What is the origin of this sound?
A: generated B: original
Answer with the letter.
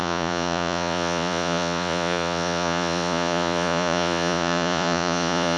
A